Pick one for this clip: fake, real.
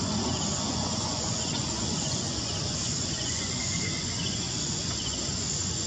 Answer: fake